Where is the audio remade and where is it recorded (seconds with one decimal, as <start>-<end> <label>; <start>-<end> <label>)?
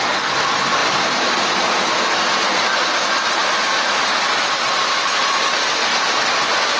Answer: 0.0-5.9 recorded; 5.9-6.8 remade